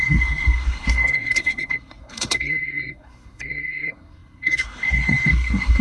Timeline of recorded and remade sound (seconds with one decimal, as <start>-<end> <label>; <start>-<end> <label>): 0.0-5.8 remade